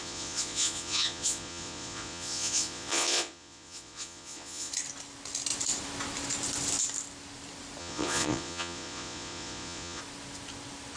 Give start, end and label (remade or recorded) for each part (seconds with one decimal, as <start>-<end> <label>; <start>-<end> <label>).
0.0-4.7 remade; 4.7-7.8 recorded; 7.8-10.0 remade; 10.0-11.0 recorded